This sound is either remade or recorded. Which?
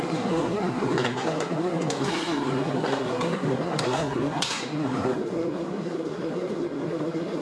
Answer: remade